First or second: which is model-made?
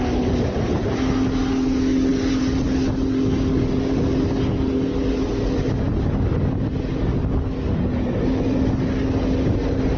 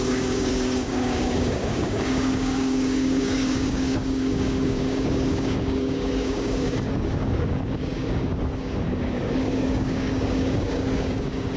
second